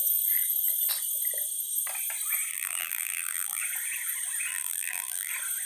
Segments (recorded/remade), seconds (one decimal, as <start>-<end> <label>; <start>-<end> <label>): 0.0-2.5 recorded; 2.5-3.6 remade; 3.6-4.5 recorded; 4.5-5.3 remade; 5.3-5.7 recorded